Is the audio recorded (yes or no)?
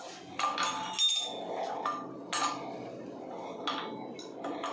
yes